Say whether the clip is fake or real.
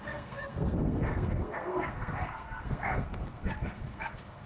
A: fake